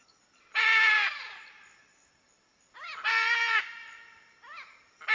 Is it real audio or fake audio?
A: real